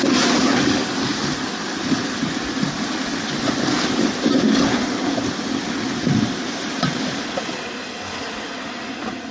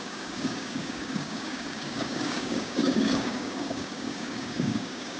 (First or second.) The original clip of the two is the first